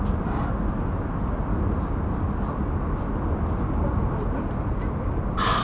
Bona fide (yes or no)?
yes